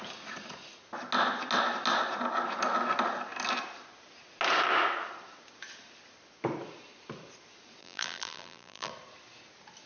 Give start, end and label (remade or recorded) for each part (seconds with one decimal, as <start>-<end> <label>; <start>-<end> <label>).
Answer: 0.0-7.8 recorded; 7.8-8.9 remade; 8.9-9.9 recorded